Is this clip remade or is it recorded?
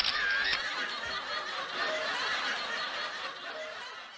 recorded